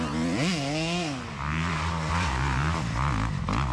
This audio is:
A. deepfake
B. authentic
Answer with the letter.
B